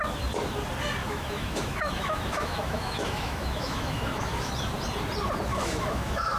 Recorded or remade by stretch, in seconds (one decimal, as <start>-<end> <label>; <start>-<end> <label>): 0.0-1.0 recorded; 1.0-4.5 remade; 4.5-5.5 recorded; 5.5-6.4 remade